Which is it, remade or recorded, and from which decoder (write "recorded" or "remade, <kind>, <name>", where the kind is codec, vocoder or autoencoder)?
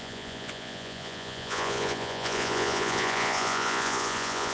remade, vocoder, Vocos